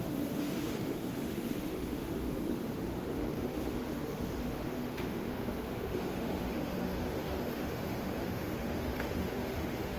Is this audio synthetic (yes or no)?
yes